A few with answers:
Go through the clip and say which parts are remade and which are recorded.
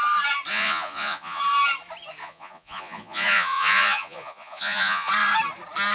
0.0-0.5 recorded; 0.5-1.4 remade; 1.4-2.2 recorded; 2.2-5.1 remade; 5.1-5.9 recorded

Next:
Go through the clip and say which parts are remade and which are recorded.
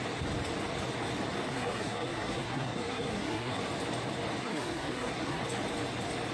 0.0-1.5 recorded; 1.5-3.6 remade; 3.6-4.4 recorded; 4.4-5.4 remade; 5.4-6.3 recorded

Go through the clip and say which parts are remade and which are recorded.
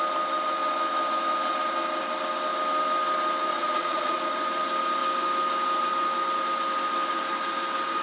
0.0-3.5 recorded; 3.5-4.2 remade; 4.2-8.0 recorded